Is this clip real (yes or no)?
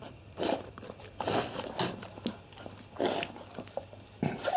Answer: no